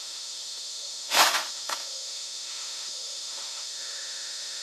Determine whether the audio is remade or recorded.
remade